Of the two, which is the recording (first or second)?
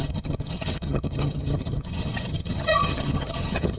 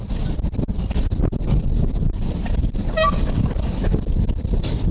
second